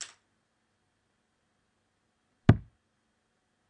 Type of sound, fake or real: real